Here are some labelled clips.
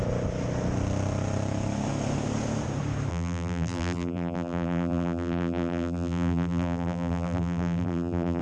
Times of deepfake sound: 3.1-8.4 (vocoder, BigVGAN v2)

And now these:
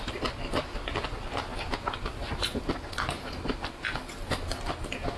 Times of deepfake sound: 1.5-2.6 (vocoder, BigVGAN v2)

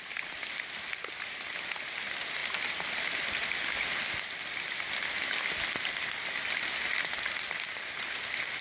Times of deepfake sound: none

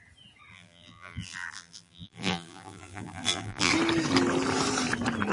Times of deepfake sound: 0.5-3.7 (vocoder, BigVGAN v2)

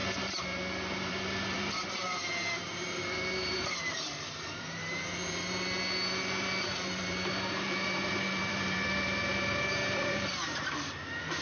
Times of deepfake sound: 0.9-11.4 (vocoder, BigVGAN v2)